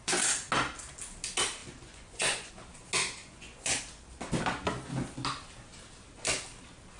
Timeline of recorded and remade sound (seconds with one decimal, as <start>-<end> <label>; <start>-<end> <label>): 0.0-1.6 recorded; 1.6-2.5 remade; 2.5-3.2 recorded; 3.2-3.8 remade; 3.8-7.0 recorded